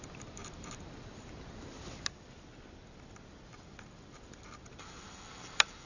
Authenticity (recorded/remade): recorded